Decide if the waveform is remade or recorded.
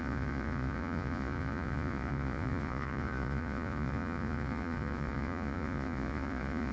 remade